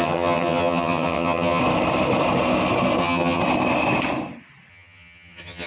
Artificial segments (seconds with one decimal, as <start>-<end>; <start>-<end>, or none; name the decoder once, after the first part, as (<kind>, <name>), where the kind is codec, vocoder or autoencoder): 0.0-1.6 (vocoder, HiFi-GAN); 3.0-3.4; 4.7-5.7